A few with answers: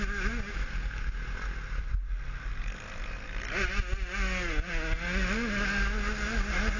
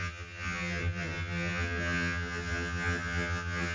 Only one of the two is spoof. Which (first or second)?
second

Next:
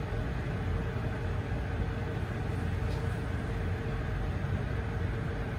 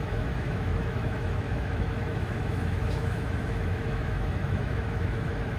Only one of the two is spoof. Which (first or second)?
second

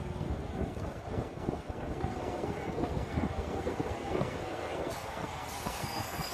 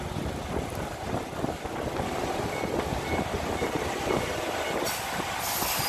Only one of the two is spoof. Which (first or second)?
first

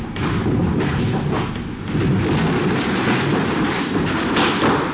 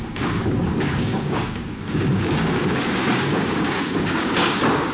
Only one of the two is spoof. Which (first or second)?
second